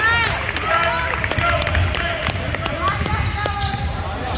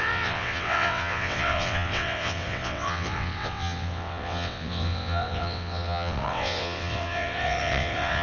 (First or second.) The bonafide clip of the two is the first